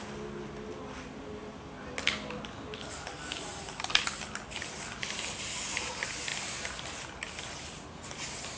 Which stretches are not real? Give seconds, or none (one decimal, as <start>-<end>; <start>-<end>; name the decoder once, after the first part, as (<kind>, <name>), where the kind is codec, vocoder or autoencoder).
none